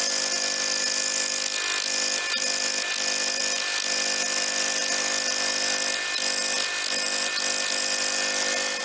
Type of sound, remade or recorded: recorded